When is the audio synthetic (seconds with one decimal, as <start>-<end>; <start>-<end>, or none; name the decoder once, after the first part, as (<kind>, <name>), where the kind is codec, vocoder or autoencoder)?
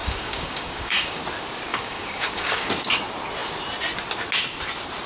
0.0-1.2 (codec, DAC); 1.7-2.7